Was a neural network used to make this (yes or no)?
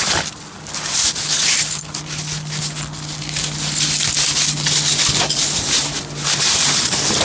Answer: no